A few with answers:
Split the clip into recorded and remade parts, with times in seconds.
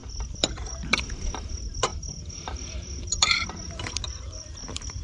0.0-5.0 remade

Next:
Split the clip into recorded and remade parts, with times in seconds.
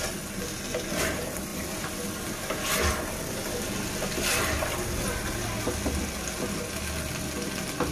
0.0-7.9 recorded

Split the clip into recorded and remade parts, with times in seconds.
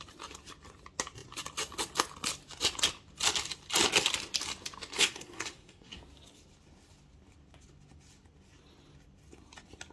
0.0-4.9 recorded; 4.9-6.0 remade; 6.0-9.9 recorded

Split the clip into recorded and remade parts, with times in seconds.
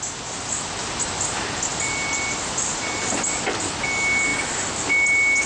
0.0-5.5 recorded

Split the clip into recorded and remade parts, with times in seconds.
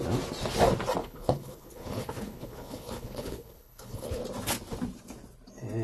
0.0-1.0 recorded; 1.0-4.2 remade; 4.2-5.8 recorded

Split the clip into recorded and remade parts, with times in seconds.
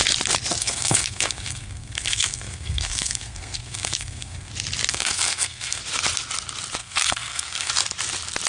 0.0-0.6 recorded; 0.6-4.5 remade; 4.5-4.9 recorded; 4.9-5.8 remade; 5.8-6.8 recorded; 6.8-7.7 remade; 7.7-8.5 recorded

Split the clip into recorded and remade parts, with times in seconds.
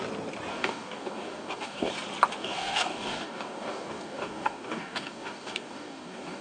0.0-0.5 recorded; 0.5-1.9 remade; 1.9-2.4 recorded; 2.4-6.4 remade